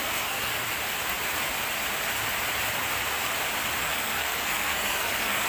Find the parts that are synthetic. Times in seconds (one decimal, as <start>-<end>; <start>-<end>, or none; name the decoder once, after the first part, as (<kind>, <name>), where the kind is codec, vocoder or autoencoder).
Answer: 0.0-0.5 (codec, SNAC); 3.8-5.5

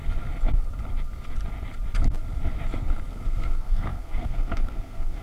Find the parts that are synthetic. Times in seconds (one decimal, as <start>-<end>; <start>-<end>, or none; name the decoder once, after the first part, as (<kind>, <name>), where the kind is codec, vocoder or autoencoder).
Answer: 3.1-5.2 (codec, SNAC)

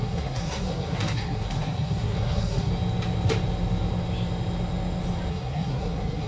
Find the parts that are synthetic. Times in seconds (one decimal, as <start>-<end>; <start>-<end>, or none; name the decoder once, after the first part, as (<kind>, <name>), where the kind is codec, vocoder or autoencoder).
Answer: 0.0-2.7 (codec, SNAC); 5.3-6.3

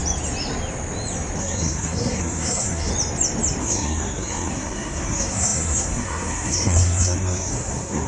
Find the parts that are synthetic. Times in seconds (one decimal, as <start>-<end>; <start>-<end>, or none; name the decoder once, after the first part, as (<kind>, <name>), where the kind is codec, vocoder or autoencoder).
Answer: 1.4-2.9 (codec, SNAC); 3.6-8.1